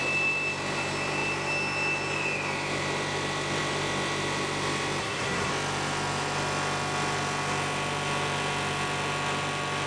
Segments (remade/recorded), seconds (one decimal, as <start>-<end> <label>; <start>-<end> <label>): 0.0-5.0 recorded; 5.0-5.5 remade; 5.5-9.9 recorded